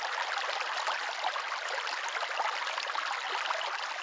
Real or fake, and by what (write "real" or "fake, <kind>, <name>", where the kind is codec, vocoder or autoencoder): real